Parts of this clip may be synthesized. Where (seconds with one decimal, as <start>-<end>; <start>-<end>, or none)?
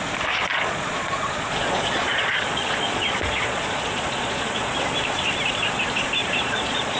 0.5-4.7; 6.2-7.0